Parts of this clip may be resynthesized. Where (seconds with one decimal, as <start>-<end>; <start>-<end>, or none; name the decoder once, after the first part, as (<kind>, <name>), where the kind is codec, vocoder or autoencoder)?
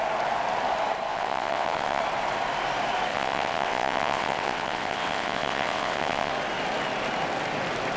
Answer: 1.1-2.0 (vocoder, WaveNeXt); 3.1-6.3